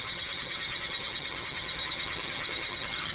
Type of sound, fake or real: fake